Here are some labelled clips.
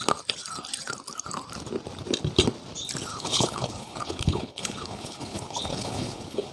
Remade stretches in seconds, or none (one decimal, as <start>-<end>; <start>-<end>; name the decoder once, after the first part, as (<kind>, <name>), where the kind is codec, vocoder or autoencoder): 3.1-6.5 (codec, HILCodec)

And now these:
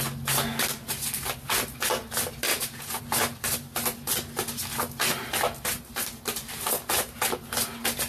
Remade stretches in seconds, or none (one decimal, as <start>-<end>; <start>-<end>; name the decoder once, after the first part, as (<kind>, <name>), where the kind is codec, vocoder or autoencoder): 2.5-3.0 (vocoder, Vocos)

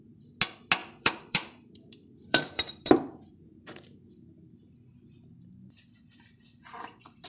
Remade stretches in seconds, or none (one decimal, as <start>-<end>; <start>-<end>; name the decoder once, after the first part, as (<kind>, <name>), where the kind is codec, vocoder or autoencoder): 0.8-3.0 (vocoder, BigVGAN v2)

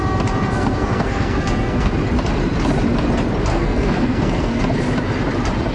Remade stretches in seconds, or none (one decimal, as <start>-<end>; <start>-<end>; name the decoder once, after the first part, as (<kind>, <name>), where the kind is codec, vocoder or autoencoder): 0.5-1.9 (codec, SNAC); 3.5-4.6

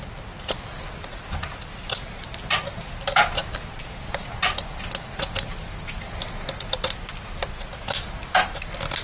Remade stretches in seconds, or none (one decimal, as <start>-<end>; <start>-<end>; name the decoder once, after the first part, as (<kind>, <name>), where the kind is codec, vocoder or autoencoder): none

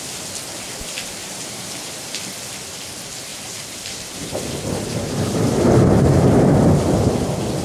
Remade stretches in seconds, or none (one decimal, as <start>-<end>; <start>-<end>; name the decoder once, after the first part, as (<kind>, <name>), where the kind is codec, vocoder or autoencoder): 1.2-2.3 (vocoder, BigVGAN v2); 3.3-6.1

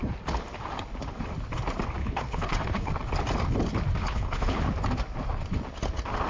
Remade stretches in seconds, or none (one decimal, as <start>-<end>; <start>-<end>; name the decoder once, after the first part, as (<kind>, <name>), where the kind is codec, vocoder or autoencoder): 2.0-2.9 (codec, HILCodec); 4.0-4.6